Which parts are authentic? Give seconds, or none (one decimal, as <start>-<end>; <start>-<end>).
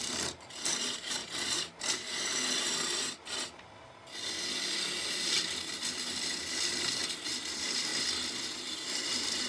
1.2-5.2; 7.0-7.5; 7.9-8.8